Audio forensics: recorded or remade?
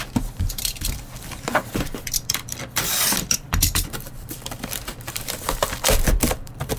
remade